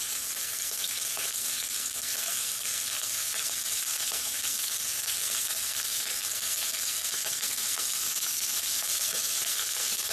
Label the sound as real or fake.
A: fake